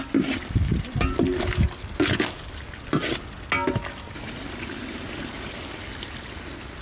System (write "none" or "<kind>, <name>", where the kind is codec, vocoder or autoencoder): none